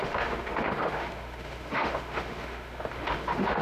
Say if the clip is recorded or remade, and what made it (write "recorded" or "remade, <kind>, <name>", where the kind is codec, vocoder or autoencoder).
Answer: remade, autoencoder, DAC-VAE